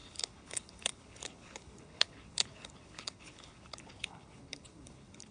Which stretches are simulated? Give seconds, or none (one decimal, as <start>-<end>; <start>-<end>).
0.0-5.3